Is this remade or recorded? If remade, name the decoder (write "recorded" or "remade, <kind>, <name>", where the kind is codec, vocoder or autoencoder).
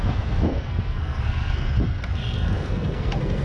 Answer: remade, codec, SNAC